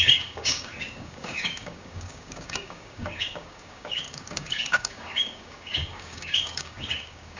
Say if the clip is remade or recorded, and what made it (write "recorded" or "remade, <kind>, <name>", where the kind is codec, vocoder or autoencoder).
remade, codec, DAC